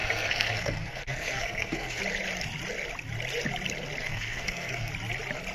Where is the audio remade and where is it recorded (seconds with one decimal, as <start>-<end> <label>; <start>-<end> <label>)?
0.0-2.0 remade; 2.0-4.1 recorded; 4.1-4.9 remade; 4.9-5.5 recorded